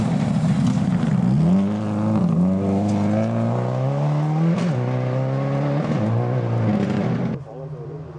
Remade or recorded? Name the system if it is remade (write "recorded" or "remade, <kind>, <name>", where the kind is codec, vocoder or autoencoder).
recorded